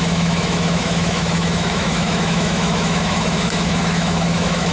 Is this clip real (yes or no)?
no